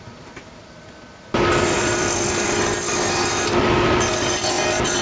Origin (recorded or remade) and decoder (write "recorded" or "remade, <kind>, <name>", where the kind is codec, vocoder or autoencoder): recorded